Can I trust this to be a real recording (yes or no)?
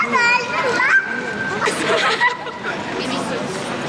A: yes